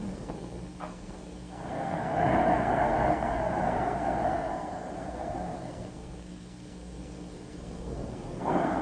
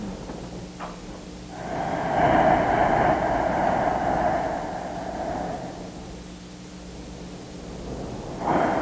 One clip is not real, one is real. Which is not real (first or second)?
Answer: first